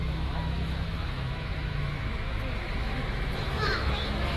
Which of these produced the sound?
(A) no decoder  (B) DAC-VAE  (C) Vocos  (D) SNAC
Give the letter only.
B